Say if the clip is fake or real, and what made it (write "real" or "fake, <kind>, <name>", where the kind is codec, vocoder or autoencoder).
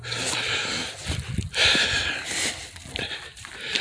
real